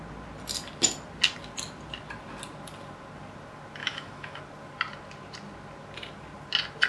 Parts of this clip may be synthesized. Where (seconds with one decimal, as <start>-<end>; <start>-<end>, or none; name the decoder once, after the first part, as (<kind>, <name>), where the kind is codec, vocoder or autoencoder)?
3.8-4.4 (autoencoder, DAC-VAE)